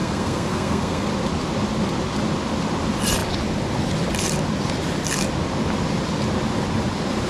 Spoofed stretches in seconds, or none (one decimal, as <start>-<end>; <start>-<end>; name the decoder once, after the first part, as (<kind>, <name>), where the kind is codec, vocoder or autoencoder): 0.0-1.1 (codec, SNAC)